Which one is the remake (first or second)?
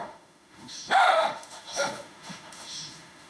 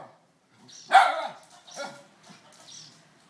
first